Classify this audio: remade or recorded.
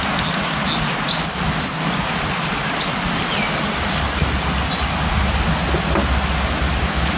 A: recorded